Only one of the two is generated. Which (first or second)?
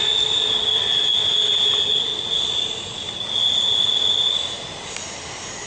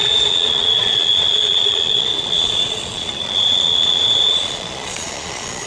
second